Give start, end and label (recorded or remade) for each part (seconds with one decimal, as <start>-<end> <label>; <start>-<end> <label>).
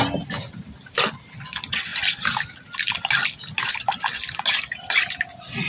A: 0.0-5.7 recorded